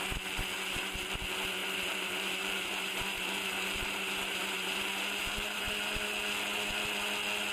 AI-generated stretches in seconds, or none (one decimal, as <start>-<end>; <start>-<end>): 1.6-5.7